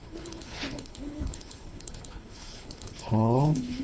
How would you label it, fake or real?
fake